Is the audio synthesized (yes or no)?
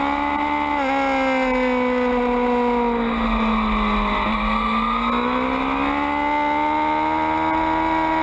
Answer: no